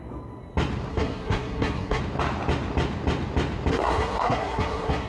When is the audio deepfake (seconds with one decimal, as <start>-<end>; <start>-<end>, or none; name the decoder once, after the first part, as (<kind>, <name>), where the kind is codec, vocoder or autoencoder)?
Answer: 0.9-2.0 (codec, SNAC); 3.7-5.1

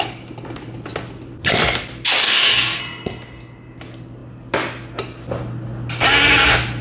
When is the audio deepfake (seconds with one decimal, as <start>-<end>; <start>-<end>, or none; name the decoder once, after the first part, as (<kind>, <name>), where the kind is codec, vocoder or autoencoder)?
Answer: 2.2-2.8 (codec, DAC)